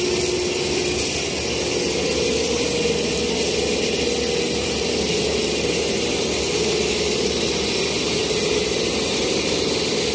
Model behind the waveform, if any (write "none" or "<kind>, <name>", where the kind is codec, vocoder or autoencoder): none